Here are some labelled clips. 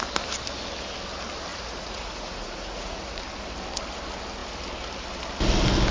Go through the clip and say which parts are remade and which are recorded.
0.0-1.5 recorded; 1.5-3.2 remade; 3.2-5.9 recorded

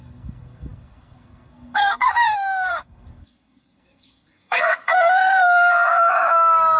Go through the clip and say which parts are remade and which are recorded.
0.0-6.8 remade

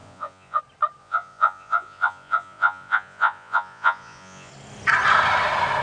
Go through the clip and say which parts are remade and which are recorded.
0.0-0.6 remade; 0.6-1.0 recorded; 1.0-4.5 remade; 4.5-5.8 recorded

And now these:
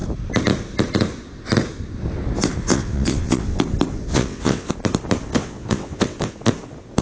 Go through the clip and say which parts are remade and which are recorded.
0.0-2.7 recorded; 2.7-3.6 remade; 3.6-4.1 recorded; 4.1-4.7 remade; 4.7-5.3 recorded; 5.3-6.3 remade; 6.3-7.0 recorded

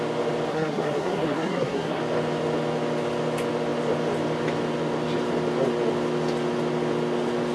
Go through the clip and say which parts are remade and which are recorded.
0.0-0.5 recorded; 0.5-2.0 remade; 2.0-7.5 recorded